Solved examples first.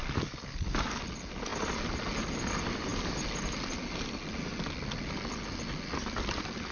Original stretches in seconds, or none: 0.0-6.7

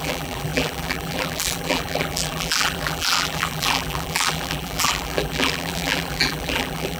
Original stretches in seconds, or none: none

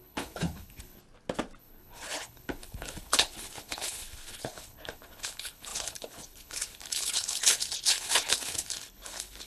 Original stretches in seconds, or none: 1.0-1.6

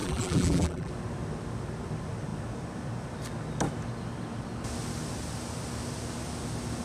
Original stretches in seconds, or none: 0.9-6.8